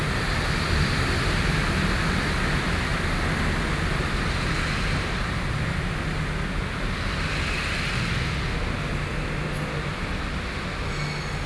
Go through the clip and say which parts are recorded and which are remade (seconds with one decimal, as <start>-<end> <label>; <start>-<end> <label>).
0.0-11.5 recorded